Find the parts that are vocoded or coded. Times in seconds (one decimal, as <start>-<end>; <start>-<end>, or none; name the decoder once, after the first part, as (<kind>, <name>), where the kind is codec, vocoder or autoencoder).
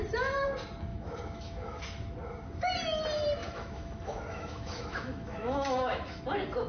0.9-1.8 (autoencoder, DAC-VAE); 3.4-6.2